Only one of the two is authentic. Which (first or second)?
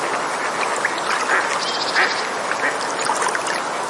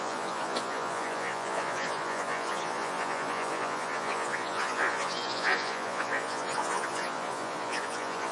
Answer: first